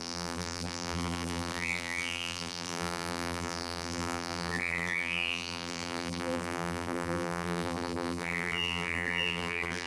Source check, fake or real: fake